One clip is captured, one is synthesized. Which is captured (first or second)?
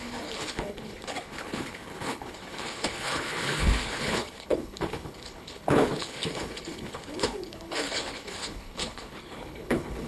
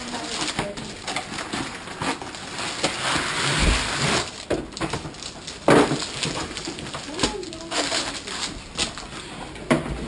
second